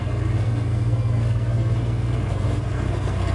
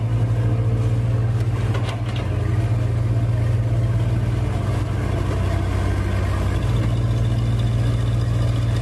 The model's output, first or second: first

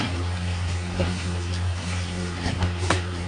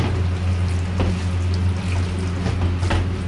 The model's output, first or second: first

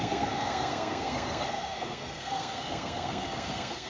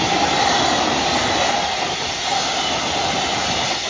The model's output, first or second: first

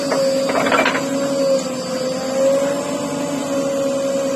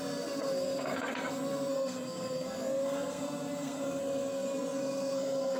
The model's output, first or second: second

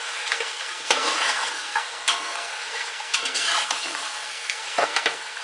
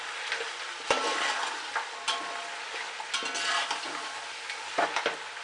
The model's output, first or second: first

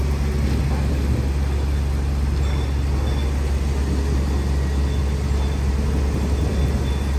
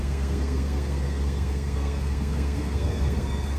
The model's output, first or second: second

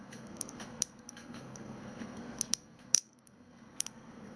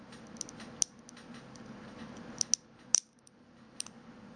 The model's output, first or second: first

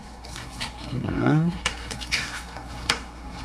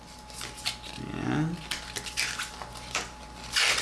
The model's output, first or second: first